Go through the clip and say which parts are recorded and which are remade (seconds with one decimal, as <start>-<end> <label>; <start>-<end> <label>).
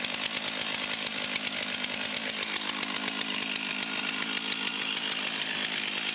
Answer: 0.0-6.1 recorded